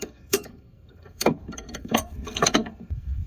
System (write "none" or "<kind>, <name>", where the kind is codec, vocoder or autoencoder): codec, SNAC